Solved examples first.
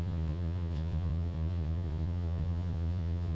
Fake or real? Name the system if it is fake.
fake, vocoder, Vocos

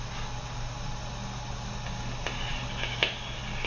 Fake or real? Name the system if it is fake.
real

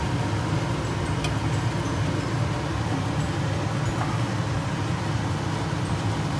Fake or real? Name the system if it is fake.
real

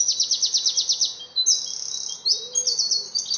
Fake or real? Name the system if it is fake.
real